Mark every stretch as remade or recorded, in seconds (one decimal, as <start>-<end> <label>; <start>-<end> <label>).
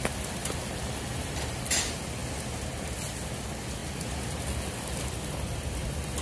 0.0-0.4 recorded; 0.4-1.6 remade; 1.6-6.2 recorded